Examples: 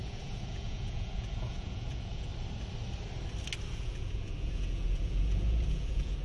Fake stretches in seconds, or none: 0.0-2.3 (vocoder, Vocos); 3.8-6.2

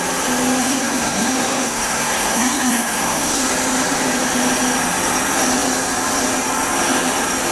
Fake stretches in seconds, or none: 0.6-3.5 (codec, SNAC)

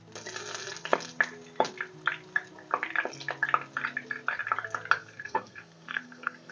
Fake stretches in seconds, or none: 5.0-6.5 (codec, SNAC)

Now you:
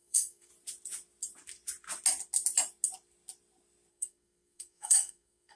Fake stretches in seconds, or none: 0.0-0.5 (codec, SNAC); 3.9-5.6

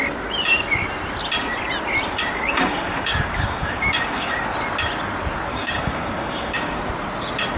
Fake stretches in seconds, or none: 2.3-4.4 (codec, DAC); 5.5-6.8

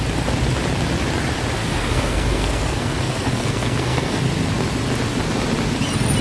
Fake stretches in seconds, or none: 1.6-4.2 (codec, SNAC)

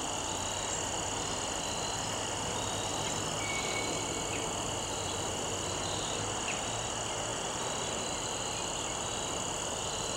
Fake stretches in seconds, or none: none

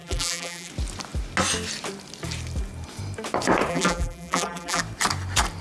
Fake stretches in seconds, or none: 0.0-0.7 (vocoder, BigVGAN v2); 3.7-4.8